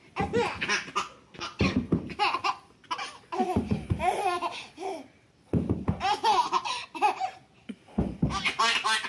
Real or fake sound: real